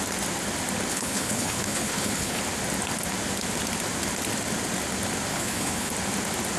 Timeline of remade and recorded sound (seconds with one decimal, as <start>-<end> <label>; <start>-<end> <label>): 0.0-0.9 recorded; 0.9-2.4 remade; 2.4-5.3 recorded; 5.3-5.9 remade; 5.9-6.6 recorded